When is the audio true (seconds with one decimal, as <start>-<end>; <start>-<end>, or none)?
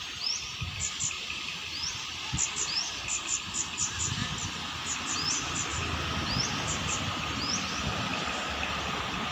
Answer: 4.2-7.1